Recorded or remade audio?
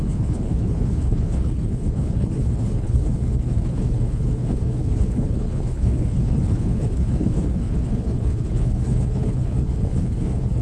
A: remade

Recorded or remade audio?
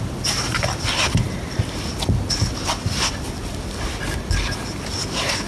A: recorded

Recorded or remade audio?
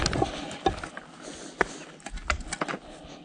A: recorded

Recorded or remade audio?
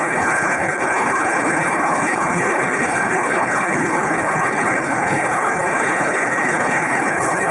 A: remade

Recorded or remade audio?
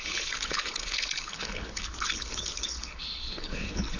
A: remade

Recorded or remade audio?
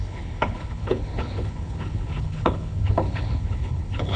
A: remade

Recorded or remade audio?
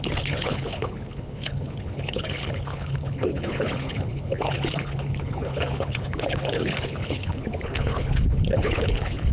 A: remade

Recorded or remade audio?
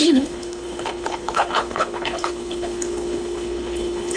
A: remade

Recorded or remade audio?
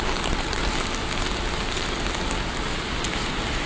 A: recorded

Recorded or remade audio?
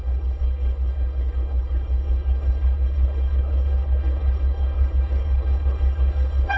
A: remade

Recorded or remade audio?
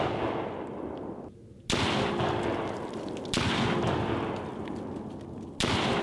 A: recorded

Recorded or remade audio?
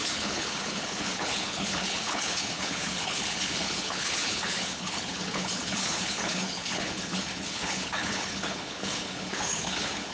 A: remade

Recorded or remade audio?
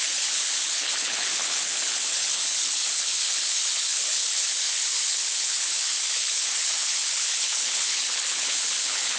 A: remade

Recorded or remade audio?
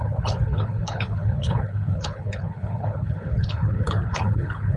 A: remade